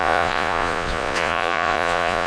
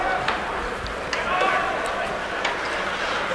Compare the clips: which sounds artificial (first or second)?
first